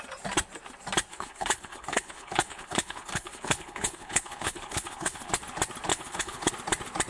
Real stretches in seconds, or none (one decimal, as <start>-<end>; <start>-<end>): 0.0-1.1; 5.3-5.9; 6.5-7.1